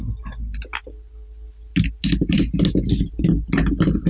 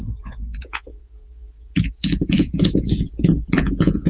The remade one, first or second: second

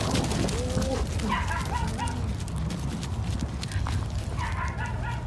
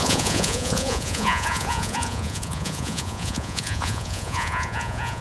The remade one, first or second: second